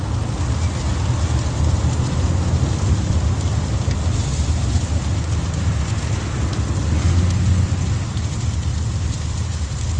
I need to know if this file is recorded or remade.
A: recorded